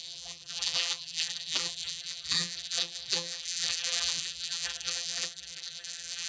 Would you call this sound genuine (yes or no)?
no